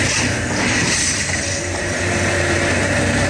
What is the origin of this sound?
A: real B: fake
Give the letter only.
B